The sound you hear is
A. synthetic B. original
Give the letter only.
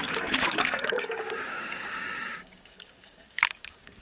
A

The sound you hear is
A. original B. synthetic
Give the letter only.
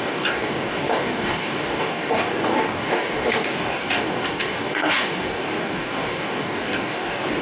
B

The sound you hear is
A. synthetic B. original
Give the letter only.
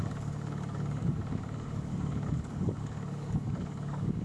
A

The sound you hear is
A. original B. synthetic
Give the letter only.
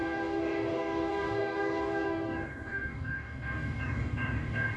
B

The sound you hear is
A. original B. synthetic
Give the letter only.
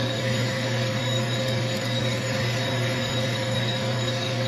B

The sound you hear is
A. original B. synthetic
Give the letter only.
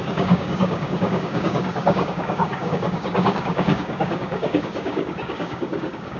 B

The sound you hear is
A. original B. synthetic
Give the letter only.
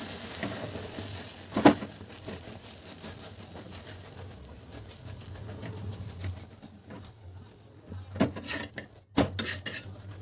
A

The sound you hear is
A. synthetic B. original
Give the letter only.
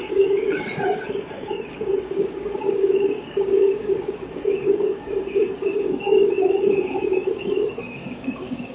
A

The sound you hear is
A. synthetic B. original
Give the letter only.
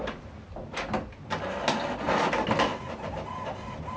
B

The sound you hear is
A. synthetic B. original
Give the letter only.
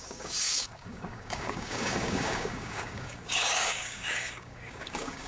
A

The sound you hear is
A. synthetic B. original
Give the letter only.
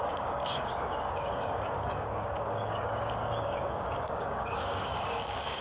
A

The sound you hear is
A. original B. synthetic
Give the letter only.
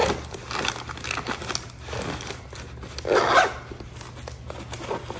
A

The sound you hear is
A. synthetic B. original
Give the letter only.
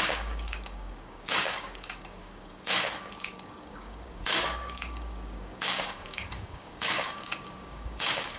A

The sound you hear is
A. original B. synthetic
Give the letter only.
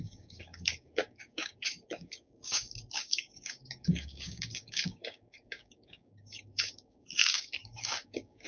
B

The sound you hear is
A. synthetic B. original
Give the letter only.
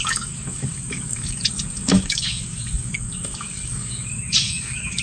A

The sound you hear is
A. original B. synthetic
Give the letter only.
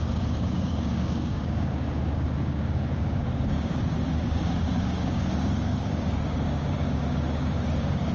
B